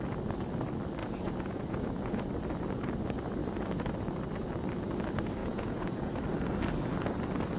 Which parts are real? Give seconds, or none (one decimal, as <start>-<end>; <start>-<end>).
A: 0.0-1.0; 2.3-5.4; 6.1-7.6